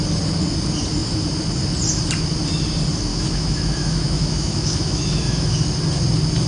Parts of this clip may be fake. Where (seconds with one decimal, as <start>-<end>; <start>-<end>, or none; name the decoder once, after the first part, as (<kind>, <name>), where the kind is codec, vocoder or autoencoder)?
3.1-5.6 (autoencoder, DAC-VAE)